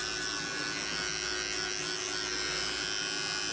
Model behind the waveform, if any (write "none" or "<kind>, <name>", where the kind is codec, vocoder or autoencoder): none